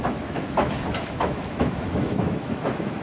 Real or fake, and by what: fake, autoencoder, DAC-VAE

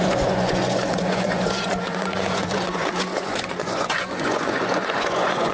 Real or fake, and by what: fake, vocoder, Vocos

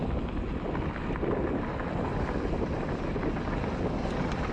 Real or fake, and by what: real